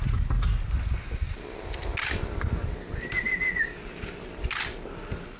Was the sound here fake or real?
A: real